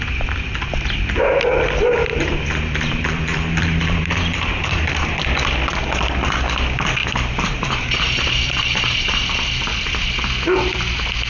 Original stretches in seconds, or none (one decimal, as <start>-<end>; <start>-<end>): 0.0-2.1; 5.2-7.0; 9.3-11.3